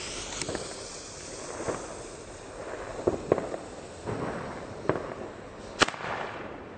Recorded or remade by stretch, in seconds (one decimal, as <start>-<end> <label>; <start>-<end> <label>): 0.0-3.1 recorded; 3.1-6.8 remade